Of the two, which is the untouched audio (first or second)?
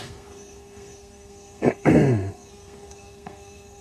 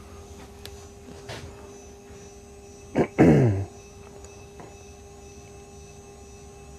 second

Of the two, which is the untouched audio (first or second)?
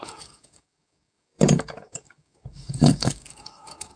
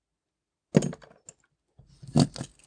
second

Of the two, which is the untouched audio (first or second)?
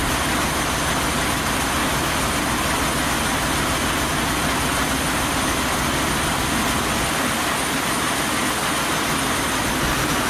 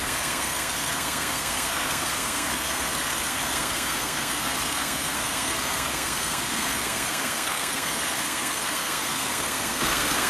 first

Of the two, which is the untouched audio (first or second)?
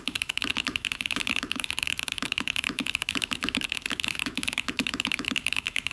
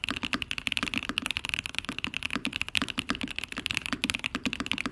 second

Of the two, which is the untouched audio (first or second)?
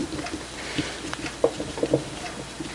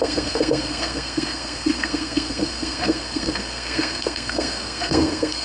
first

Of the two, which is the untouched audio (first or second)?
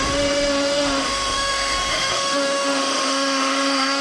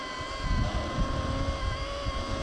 second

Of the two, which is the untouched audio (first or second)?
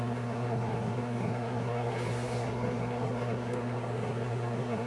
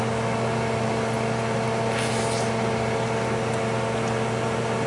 second